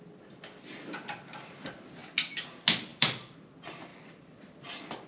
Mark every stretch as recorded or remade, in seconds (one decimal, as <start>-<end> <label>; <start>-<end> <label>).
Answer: 0.0-2.9 recorded; 2.9-3.4 remade; 3.4-3.9 recorded; 3.9-4.6 remade; 4.6-5.1 recorded